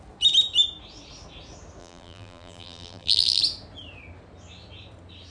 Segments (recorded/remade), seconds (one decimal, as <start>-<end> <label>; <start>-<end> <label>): 0.0-1.8 recorded; 1.8-3.4 remade; 3.4-5.3 recorded